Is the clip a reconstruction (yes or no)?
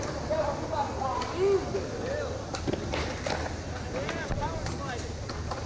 no